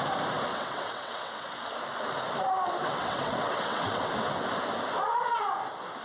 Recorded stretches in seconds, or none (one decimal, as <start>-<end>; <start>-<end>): 0.0-0.5; 1.4-2.8; 4.1-6.0